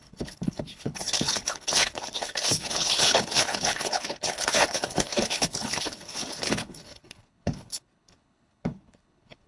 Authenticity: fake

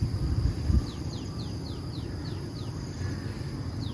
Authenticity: fake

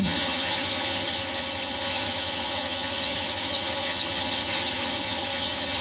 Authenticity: fake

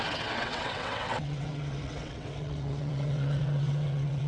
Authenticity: fake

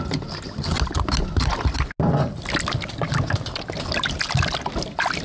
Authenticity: real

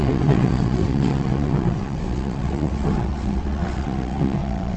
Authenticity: fake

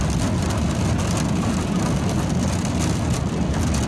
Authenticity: real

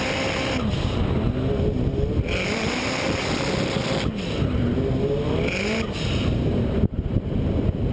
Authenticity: real